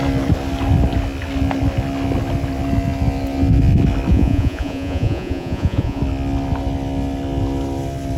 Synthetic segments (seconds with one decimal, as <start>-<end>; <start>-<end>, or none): 4.1-6.0